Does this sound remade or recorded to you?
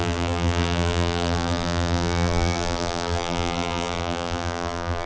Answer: remade